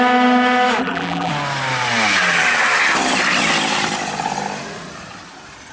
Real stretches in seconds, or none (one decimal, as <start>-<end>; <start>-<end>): 0.0-0.8; 1.3-5.7